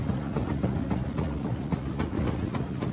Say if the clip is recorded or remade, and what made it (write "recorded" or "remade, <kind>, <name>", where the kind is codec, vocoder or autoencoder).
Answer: remade, vocoder, Vocos